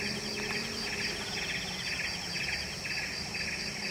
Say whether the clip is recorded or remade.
recorded